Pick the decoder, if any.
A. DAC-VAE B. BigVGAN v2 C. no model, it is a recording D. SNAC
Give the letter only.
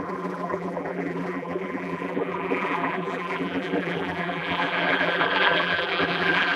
B